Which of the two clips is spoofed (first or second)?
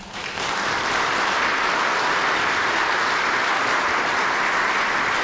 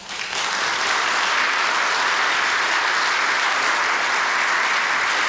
first